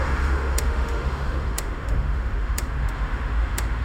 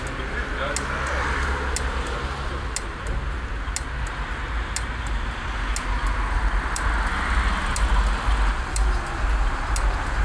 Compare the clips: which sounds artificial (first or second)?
first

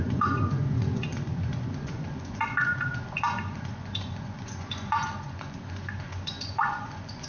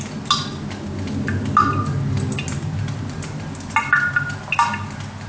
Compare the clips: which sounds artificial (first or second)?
first